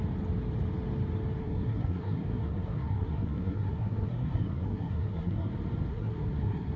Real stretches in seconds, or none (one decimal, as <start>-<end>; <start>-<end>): 0.0-1.4; 5.5-5.9